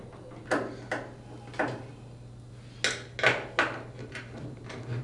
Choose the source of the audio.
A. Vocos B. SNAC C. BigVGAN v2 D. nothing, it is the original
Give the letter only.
D